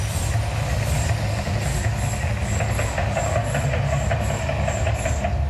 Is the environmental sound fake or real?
real